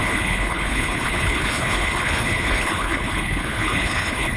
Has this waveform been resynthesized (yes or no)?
yes